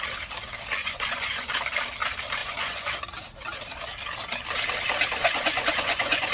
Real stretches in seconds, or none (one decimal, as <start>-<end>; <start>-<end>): 0.0-0.8; 1.5-2.4; 2.9-5.2